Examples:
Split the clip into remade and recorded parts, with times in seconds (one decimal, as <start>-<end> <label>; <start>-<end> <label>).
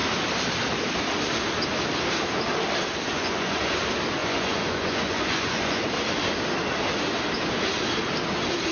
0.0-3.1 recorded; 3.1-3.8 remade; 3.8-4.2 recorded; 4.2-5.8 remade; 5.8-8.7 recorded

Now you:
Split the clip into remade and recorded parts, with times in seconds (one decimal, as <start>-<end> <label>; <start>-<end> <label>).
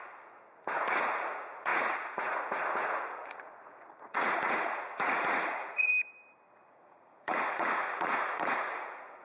0.0-5.9 remade; 5.9-6.5 recorded; 6.5-9.2 remade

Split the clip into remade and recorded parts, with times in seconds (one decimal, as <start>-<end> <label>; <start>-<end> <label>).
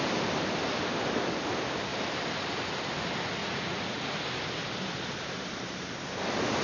0.0-3.4 recorded; 3.4-4.2 remade; 4.2-6.6 recorded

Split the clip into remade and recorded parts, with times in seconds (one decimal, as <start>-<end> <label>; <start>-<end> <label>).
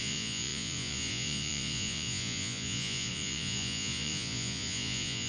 0.0-5.3 remade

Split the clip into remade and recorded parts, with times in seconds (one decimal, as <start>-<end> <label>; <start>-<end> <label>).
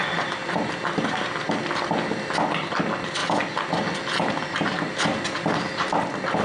0.0-6.4 recorded